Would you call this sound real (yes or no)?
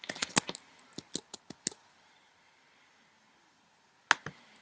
yes